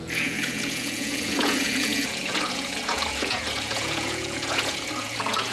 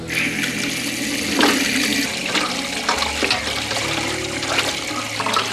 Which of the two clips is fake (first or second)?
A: first